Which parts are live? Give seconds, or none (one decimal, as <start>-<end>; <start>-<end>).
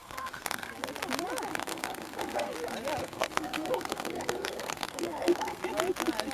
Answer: 0.7-1.5; 2.5-3.0; 5.6-6.3